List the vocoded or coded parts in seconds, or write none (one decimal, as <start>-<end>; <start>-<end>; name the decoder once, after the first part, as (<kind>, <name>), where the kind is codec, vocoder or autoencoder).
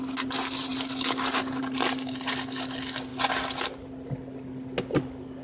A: none